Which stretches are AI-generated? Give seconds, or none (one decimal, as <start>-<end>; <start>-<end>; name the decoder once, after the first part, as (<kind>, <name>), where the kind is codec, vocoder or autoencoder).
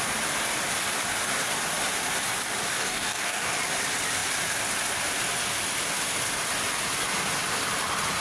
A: 2.7-3.5 (codec, DAC)